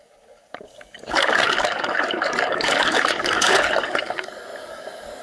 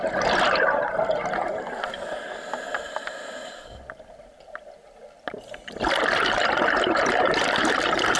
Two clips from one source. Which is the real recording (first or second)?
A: second